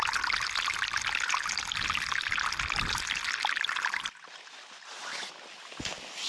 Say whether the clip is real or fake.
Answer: real